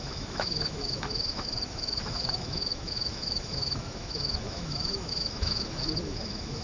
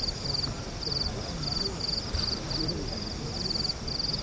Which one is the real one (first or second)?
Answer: second